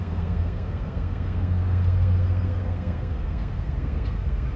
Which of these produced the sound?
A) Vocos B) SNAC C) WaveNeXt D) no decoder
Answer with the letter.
B